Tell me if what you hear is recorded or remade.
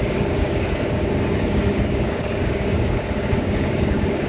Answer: remade